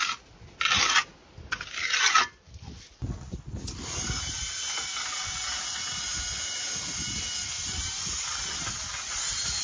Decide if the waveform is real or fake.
real